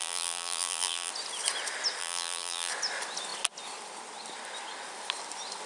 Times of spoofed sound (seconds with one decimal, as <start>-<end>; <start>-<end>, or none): 0.0-1.1; 2.0-2.7